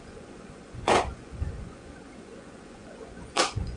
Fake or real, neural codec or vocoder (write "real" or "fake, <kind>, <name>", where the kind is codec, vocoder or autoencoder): fake, vocoder, Vocos